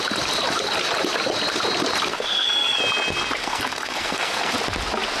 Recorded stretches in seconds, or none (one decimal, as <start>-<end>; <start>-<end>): 0.0-2.1; 2.8-3.4; 4.5-5.2